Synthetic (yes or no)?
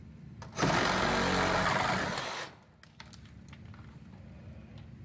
no